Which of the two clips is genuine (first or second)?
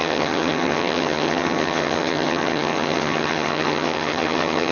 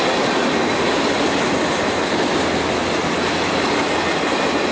second